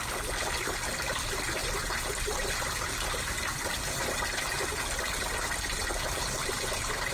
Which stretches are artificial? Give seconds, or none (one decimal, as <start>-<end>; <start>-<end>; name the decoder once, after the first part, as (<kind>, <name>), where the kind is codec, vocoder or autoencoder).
1.6-5.9 (vocoder, BigVGAN v2); 6.4-7.1

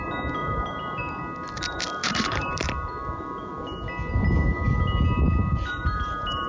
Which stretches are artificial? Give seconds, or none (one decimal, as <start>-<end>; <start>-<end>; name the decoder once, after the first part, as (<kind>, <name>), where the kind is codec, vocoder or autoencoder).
0.4-1.0 (vocoder, BigVGAN v2); 2.0-3.5; 5.5-6.5

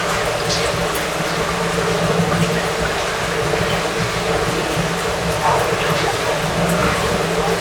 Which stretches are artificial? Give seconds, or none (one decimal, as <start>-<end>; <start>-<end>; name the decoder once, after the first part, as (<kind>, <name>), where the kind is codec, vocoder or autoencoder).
4.6-6.3 (vocoder, BigVGAN v2); 6.8-7.6

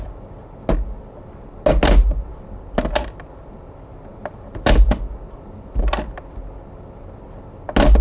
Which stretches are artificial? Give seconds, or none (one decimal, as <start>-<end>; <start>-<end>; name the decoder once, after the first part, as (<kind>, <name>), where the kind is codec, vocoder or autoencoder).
none

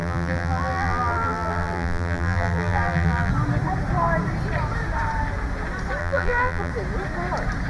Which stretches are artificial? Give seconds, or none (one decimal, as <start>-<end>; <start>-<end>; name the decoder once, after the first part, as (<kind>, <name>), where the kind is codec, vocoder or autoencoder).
0.0-3.3 (vocoder, BigVGAN v2); 6.0-6.7

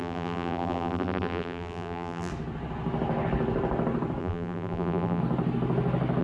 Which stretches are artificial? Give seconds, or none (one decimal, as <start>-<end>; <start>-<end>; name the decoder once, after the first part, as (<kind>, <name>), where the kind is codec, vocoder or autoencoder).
0.0-2.3 (vocoder, BigVGAN v2); 4.2-5.2

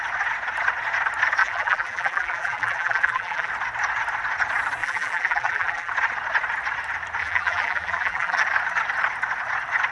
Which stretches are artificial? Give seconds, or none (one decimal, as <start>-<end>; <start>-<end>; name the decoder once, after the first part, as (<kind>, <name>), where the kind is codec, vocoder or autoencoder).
1.4-3.5 (vocoder, BigVGAN v2); 4.8-5.9; 7.2-8.4